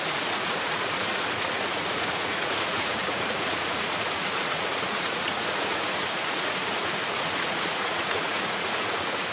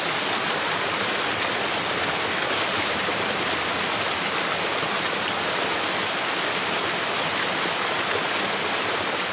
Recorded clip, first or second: second